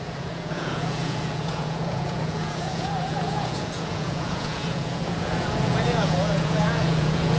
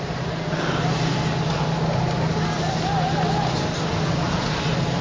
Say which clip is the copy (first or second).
first